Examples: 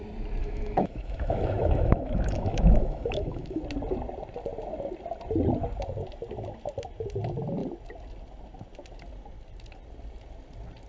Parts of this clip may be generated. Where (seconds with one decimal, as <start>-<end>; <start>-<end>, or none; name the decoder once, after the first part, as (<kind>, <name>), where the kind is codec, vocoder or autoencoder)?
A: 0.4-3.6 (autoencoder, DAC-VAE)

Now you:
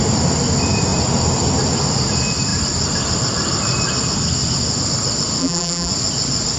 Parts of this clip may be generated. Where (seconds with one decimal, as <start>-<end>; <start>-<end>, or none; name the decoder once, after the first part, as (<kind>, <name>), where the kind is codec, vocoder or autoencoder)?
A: 5.4-5.9 (vocoder, BigVGAN v2)

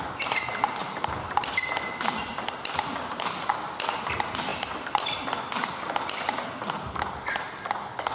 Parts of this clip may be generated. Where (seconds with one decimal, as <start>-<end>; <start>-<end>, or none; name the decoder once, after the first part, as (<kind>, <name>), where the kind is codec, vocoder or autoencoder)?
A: 0.8-1.4 (vocoder, BigVGAN v2); 2.3-3.5

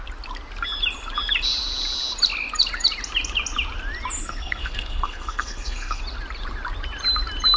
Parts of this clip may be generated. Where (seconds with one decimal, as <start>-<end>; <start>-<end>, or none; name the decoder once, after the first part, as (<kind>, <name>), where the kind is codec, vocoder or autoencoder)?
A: 4.2-6.0 (codec, SNAC)

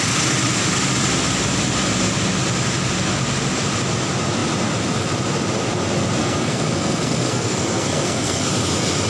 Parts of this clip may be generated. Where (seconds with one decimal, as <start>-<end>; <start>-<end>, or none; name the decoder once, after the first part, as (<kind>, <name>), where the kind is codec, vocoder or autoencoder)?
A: 6.2-8.5 (codec, SNAC)